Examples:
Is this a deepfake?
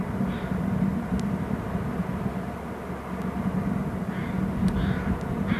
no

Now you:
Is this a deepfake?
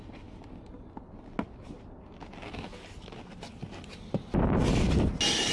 no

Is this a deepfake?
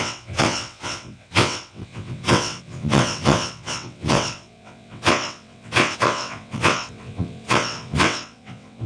yes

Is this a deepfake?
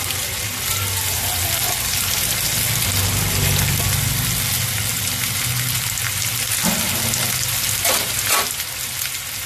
no